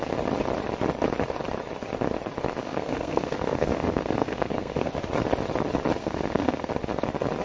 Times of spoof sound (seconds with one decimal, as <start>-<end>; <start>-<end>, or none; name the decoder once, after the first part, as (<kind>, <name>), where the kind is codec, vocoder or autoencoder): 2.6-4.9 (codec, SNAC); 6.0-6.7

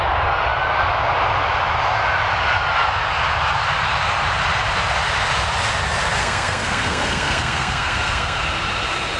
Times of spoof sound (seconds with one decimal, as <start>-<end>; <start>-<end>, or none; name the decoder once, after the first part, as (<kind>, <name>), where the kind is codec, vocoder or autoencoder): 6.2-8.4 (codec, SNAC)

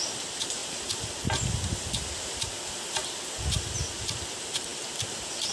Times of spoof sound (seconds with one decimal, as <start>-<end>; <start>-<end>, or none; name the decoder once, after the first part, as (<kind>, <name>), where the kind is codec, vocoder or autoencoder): none